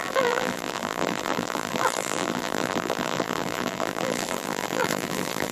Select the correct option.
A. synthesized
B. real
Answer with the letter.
A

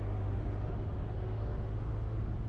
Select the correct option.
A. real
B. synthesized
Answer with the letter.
B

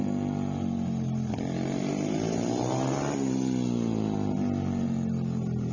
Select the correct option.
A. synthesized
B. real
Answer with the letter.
B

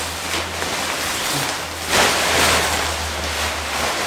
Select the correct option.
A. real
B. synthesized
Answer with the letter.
A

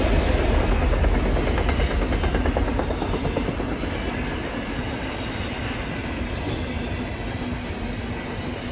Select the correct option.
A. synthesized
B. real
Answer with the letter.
B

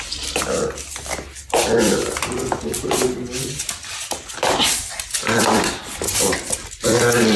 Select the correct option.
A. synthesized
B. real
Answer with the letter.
A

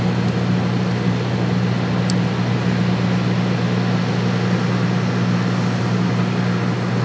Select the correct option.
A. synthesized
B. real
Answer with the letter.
B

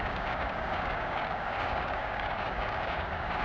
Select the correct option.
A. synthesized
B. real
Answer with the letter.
A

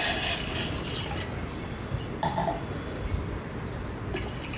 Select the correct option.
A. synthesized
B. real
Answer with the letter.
B